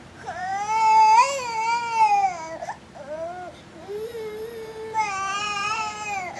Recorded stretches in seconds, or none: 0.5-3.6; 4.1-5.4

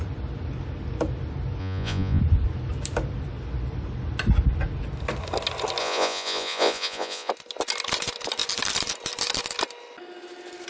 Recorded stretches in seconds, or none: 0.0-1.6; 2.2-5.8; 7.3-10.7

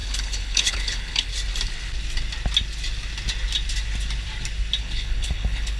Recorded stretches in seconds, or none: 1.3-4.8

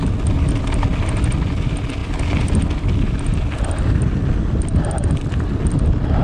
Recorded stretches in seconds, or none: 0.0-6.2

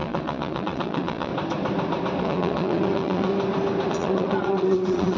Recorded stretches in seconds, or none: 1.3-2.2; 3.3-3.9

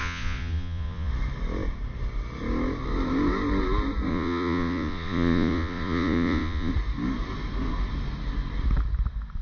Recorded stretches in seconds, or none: 1.1-4.1; 6.7-9.4